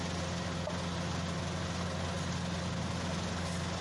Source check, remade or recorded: recorded